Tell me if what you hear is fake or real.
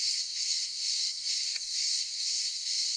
fake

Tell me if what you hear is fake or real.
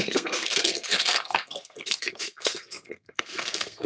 fake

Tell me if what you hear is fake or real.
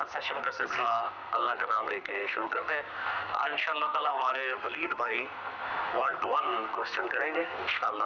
fake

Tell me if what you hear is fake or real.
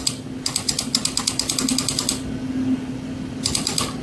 real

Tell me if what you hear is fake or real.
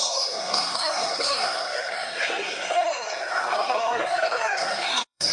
fake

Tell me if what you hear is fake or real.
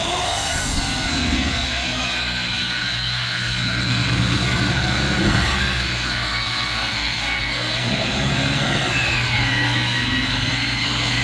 fake